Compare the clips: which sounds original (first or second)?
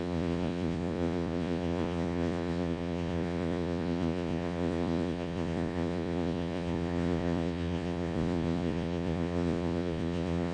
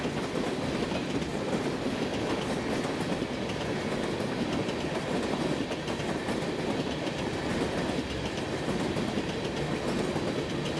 second